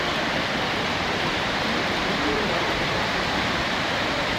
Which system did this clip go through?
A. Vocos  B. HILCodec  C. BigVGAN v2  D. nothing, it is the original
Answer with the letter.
D